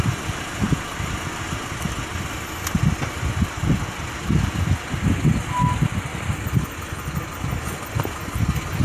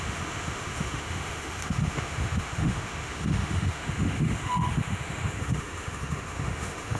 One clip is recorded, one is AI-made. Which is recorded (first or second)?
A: first